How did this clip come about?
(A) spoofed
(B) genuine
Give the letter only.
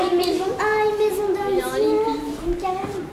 A